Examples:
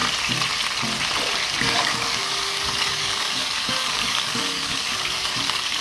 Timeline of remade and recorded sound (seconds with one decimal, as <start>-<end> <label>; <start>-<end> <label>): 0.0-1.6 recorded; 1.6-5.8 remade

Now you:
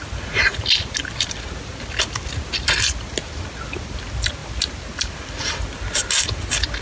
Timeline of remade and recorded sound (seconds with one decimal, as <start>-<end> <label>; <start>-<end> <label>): 0.0-6.8 recorded

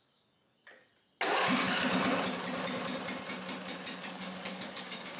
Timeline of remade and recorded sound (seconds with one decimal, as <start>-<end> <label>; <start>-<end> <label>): 0.0-0.9 remade; 0.9-4.0 recorded; 4.0-5.2 remade